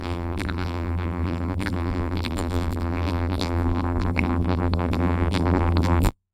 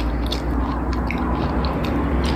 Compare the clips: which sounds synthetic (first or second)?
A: first